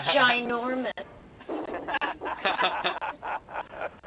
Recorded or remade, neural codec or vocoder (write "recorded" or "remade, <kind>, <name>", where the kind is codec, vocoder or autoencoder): recorded